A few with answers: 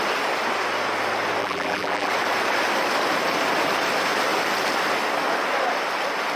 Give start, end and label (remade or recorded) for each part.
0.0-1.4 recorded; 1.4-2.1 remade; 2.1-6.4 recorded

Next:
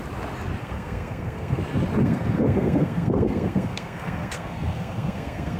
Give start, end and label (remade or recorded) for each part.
0.0-0.6 recorded; 0.6-1.6 remade; 1.6-2.0 recorded; 2.0-5.6 remade

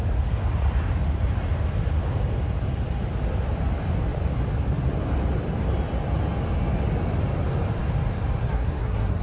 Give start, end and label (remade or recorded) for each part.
0.0-8.4 recorded; 8.4-9.2 remade